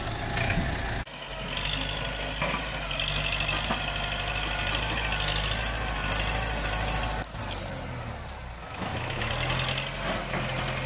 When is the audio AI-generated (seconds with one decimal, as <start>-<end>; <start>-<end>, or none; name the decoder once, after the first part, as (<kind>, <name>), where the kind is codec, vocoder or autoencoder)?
8.6-9.3 (autoencoder, DAC-VAE)